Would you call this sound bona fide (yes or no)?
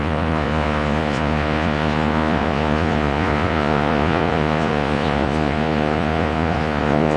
no